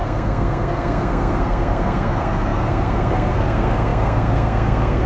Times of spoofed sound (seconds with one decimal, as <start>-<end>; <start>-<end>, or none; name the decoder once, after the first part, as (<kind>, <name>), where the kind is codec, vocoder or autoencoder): 0.0-5.1 (codec, SNAC)